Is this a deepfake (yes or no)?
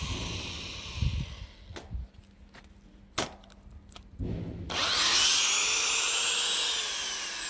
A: no